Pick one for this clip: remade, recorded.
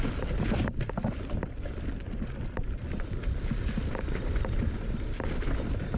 recorded